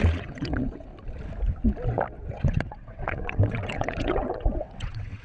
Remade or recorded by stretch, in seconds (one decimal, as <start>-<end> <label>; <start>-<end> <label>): 0.0-0.9 remade; 0.9-2.3 recorded; 2.3-5.2 remade